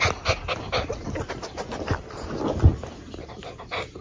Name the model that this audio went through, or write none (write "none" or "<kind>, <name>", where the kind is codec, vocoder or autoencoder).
none